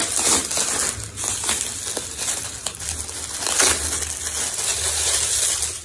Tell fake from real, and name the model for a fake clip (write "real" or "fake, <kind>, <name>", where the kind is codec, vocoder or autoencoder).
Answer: real